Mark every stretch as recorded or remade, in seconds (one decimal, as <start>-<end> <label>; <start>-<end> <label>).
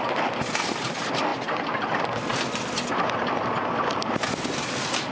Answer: 0.0-5.1 recorded